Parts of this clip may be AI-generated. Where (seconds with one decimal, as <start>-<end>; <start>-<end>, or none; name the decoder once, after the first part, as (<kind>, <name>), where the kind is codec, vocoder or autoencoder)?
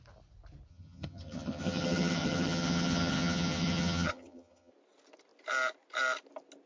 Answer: 0.7-4.7 (vocoder, HiFi-GAN)